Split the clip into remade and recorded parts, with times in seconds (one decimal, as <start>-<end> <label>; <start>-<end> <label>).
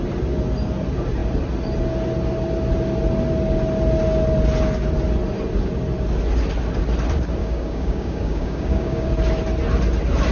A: 0.0-7.4 recorded; 7.4-9.1 remade; 9.1-10.3 recorded